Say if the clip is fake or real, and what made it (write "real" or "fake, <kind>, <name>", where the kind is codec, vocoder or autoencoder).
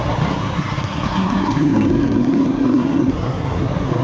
fake, codec, SNAC